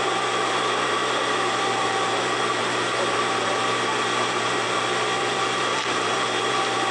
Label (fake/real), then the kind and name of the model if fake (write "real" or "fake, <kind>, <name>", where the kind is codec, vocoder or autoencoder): fake, vocoder, BigVGAN v2